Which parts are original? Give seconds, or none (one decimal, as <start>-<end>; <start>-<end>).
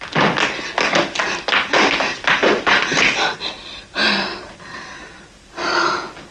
0.0-6.3